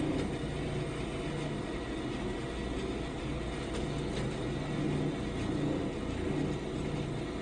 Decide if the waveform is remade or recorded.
recorded